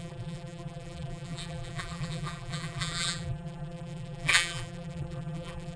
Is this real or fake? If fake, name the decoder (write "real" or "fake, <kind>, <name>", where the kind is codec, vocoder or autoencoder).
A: fake, vocoder, BigVGAN v2